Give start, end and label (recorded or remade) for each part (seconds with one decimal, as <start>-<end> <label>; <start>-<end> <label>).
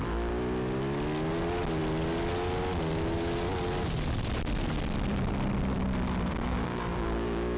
0.0-6.3 recorded; 6.3-7.6 remade